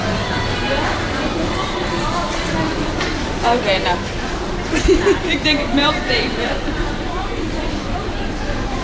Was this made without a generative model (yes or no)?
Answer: no